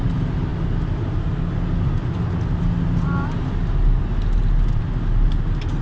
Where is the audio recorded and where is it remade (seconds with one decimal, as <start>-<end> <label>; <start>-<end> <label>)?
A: 0.0-5.8 recorded